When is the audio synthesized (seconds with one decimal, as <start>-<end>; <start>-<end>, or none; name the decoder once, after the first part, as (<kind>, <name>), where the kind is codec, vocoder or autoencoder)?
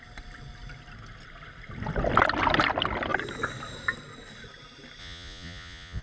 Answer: 5.0-6.0 (vocoder, Vocos)